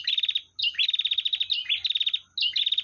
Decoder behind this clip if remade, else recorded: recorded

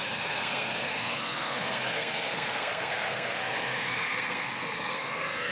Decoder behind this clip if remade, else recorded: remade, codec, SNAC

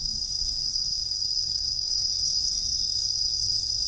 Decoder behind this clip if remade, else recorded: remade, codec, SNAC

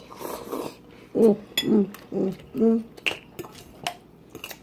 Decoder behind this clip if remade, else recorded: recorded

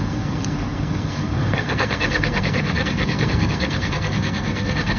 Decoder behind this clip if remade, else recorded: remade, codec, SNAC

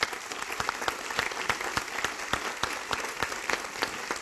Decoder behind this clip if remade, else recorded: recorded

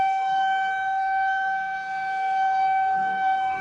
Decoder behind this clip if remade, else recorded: remade, codec, SNAC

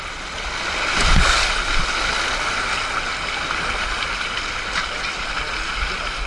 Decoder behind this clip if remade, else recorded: recorded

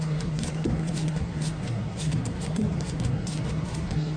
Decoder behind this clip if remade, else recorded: remade, codec, SNAC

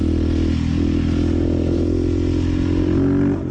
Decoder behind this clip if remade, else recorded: recorded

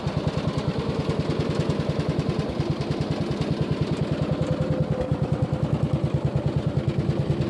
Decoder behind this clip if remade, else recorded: recorded